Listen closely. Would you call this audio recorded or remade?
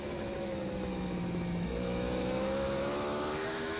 remade